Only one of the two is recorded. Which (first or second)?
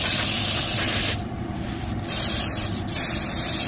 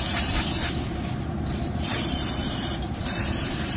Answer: first